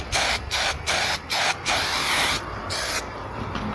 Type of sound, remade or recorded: recorded